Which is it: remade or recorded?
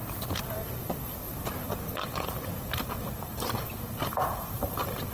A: remade